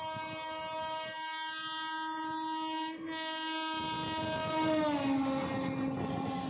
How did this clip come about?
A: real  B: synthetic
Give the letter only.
A